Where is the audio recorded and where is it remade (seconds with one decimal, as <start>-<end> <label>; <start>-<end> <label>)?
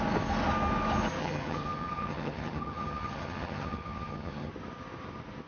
0.0-1.2 recorded; 1.2-4.5 remade; 4.5-5.5 recorded